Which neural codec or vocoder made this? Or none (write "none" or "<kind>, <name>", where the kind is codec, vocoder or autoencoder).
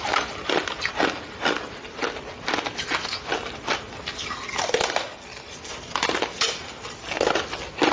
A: none